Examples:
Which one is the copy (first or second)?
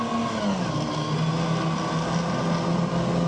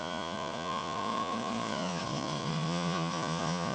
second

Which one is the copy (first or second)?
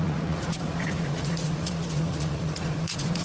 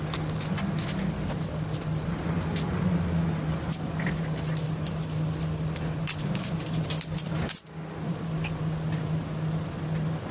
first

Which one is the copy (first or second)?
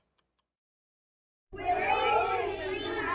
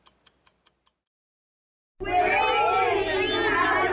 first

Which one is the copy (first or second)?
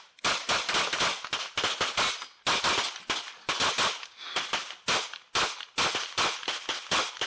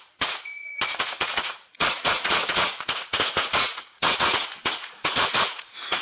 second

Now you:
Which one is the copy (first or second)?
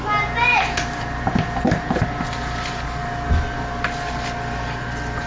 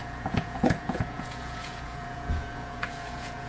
second